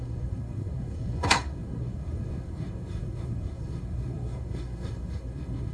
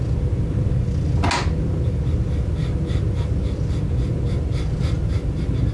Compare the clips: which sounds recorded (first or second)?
second